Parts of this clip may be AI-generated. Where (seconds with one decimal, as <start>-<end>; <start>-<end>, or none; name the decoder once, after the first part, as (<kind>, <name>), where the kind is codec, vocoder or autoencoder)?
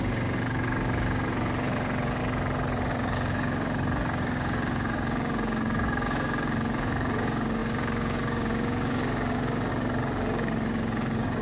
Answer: 0.0-2.2 (codec, DAC); 2.9-11.4